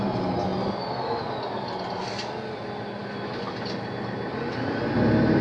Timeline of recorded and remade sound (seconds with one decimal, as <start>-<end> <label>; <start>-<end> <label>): 0.0-5.4 recorded